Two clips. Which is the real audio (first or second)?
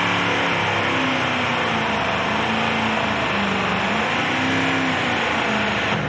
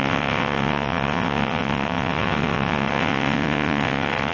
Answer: first